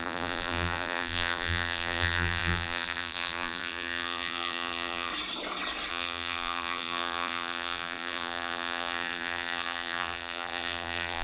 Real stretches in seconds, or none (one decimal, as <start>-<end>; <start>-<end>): 5.1-5.9